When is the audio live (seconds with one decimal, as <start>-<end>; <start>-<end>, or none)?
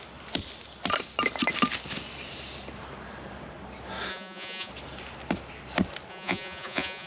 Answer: 0.0-4.1; 4.7-6.1